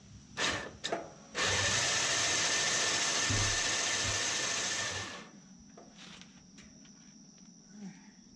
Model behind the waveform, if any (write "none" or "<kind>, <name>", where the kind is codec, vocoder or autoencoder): none